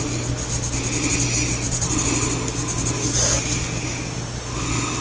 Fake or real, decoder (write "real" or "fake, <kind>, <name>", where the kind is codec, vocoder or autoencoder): real